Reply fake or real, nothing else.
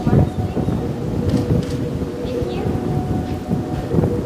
real